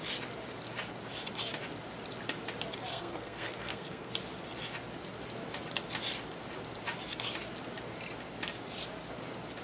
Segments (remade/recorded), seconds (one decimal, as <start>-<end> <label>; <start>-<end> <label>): 0.0-2.9 recorded; 2.9-4.1 remade; 4.1-9.6 recorded